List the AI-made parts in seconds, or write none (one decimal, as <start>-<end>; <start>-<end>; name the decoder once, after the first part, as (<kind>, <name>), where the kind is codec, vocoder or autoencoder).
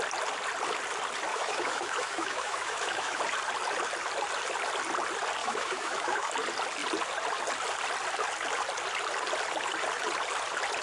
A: 1.3-3.2 (autoencoder, DAC-VAE); 5.4-6.3